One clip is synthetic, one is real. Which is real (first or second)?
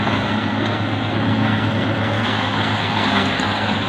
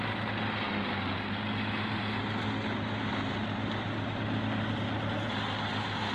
second